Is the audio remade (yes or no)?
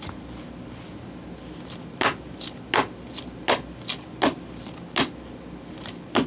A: no